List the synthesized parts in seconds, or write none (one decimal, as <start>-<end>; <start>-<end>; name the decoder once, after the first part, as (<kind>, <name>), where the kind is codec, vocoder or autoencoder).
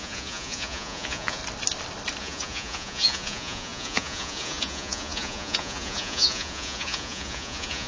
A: 0.0-1.4 (vocoder, Vocos); 2.2-7.9